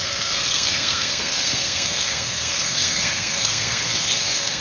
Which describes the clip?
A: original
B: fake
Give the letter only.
B